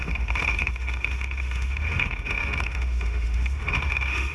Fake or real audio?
fake